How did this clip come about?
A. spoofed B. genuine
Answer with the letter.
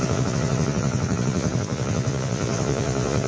A